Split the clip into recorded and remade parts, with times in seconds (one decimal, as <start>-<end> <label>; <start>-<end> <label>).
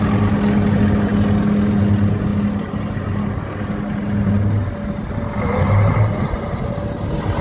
0.0-7.4 recorded